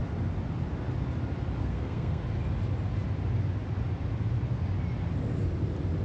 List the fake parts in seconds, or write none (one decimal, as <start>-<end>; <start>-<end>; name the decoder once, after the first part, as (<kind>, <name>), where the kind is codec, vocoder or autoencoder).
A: 1.6-2.2 (codec, SNAC)